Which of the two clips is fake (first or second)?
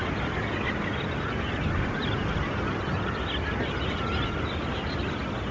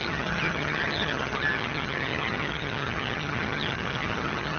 second